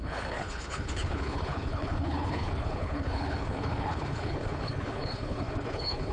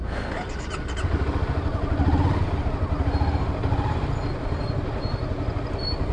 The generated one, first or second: first